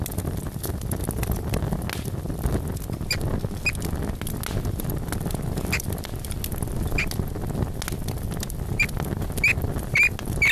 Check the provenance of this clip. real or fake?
real